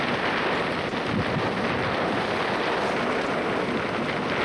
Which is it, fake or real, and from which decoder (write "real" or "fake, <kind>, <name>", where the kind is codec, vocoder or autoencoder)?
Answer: real